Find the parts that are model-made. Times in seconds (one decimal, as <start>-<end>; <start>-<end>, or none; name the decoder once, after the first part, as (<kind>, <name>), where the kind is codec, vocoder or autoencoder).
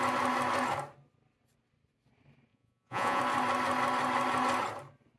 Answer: 2.5-3.2 (vocoder, Vocos)